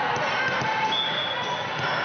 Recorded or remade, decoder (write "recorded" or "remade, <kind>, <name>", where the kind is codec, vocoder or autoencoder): recorded